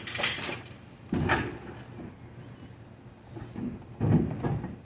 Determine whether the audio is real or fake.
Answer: real